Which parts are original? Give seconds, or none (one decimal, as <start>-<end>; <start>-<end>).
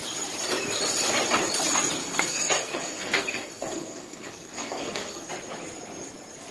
0.0-2.0; 5.3-6.5